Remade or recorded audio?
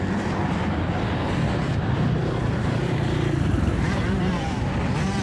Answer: remade